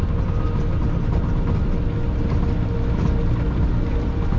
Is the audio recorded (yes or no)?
yes